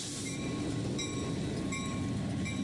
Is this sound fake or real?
real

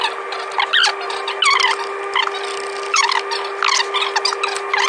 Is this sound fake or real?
real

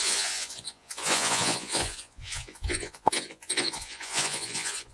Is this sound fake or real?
fake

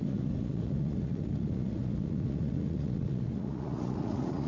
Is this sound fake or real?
fake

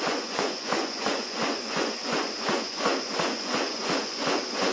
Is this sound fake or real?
fake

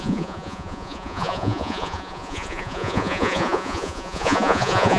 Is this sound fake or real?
fake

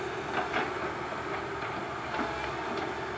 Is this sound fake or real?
real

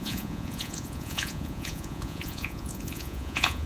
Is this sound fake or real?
fake